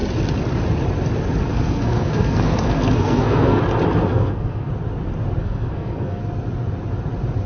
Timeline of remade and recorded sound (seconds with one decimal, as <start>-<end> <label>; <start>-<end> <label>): 0.0-1.5 recorded; 1.5-3.6 remade; 3.6-4.1 recorded; 4.1-4.7 remade; 4.7-5.4 recorded; 5.4-6.2 remade; 6.2-7.5 recorded